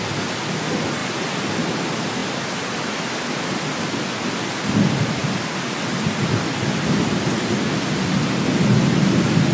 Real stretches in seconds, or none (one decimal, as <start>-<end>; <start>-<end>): 0.0-1.0; 1.6-5.2; 5.9-9.5